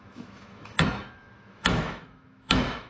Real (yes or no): no